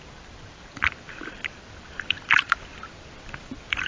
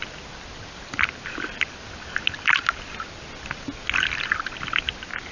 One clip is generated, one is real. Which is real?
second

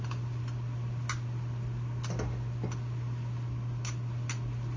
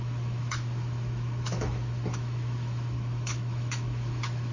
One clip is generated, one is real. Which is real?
first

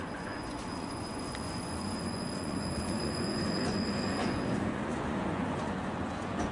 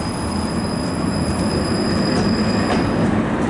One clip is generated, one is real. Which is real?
second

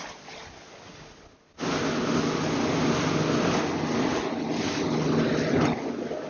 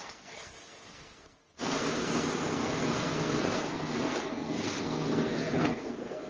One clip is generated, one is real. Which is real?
first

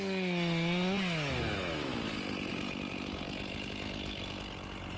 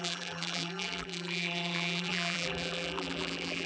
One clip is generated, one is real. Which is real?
first